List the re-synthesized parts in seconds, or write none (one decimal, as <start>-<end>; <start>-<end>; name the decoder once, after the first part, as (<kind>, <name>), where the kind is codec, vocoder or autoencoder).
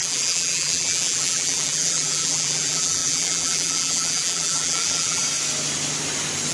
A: 0.0-5.2 (vocoder, BigVGAN v2)